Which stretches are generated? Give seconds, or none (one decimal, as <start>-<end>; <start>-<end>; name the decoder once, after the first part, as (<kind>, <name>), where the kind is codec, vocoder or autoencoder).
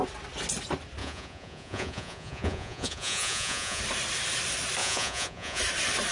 1.0-3.8 (vocoder, Vocos); 4.8-5.6